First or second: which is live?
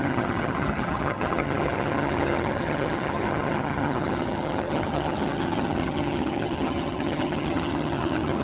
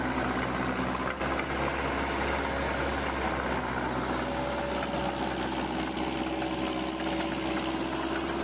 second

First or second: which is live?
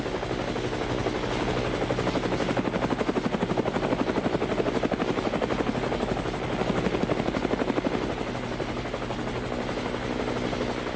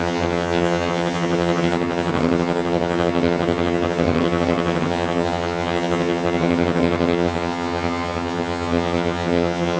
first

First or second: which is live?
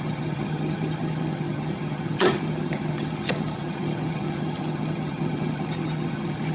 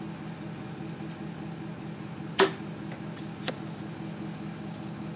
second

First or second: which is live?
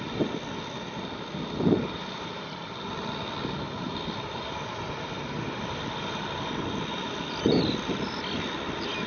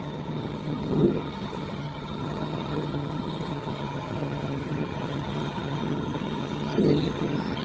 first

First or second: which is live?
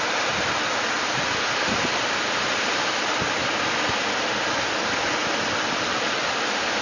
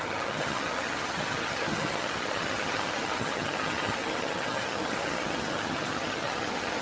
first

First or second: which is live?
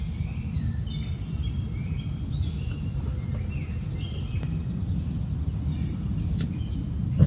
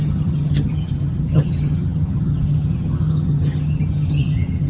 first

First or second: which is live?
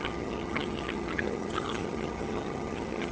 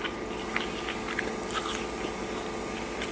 second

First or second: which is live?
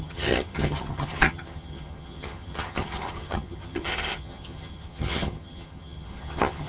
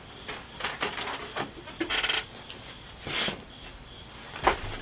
second